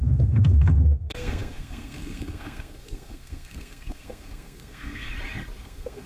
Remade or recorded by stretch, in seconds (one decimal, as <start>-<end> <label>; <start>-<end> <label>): 0.0-5.1 remade; 5.1-5.6 recorded; 5.6-6.1 remade